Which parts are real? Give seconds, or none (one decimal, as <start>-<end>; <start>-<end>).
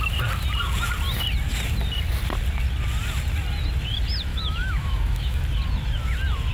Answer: 0.0-4.3; 5.4-6.5